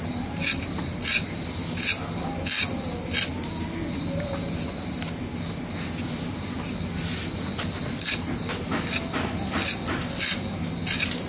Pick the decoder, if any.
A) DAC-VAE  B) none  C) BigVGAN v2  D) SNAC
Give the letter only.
B